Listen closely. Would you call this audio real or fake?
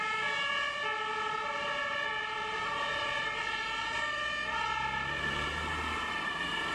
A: fake